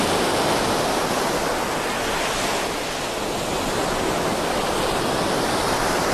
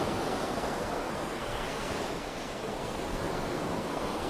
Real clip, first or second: first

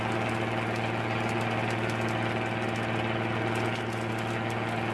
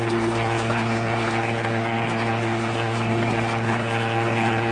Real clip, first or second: first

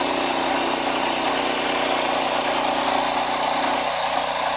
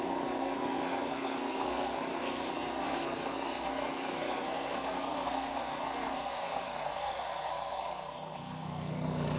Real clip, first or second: first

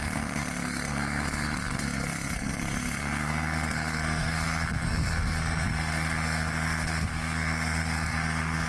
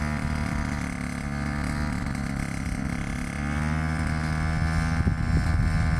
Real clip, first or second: second